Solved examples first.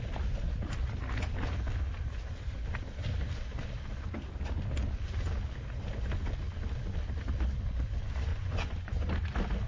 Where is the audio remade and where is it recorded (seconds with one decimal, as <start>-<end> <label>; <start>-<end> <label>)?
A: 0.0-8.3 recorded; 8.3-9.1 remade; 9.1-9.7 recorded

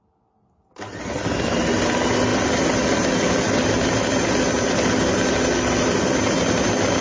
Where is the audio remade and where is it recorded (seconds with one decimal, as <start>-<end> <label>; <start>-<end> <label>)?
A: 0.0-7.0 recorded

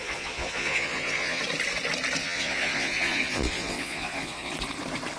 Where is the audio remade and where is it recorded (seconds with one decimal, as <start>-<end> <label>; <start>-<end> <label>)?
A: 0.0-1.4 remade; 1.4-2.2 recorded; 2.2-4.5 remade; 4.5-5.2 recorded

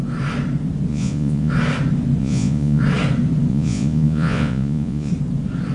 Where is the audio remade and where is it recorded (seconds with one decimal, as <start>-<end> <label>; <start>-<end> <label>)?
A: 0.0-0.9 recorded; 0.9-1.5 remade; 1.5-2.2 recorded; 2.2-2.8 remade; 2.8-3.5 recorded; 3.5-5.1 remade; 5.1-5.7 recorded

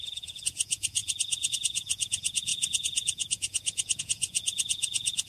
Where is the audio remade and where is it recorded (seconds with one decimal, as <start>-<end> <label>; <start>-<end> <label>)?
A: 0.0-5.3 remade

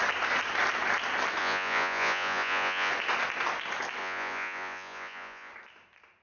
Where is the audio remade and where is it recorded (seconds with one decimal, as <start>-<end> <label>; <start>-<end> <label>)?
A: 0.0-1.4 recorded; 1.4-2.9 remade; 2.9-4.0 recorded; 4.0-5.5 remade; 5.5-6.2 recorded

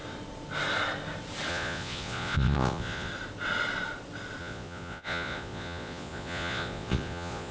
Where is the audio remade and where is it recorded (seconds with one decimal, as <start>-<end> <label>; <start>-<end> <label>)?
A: 0.0-1.5 recorded; 1.5-3.1 remade; 3.1-4.4 recorded; 4.4-7.5 remade